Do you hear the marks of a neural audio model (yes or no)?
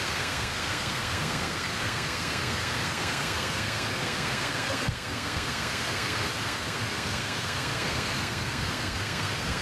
yes